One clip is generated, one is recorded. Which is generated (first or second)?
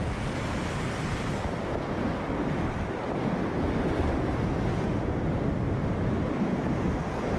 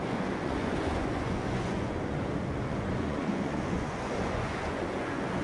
second